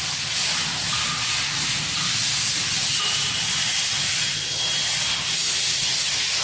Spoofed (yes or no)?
no